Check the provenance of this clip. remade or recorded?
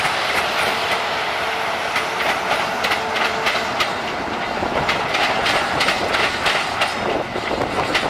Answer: recorded